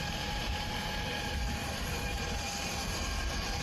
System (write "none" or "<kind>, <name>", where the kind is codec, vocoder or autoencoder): vocoder, BigVGAN v2